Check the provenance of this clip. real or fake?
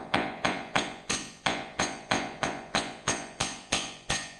fake